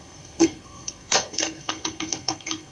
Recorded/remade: remade